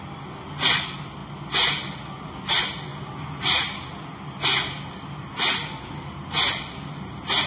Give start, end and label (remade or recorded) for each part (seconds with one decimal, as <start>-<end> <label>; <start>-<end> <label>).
0.0-7.5 recorded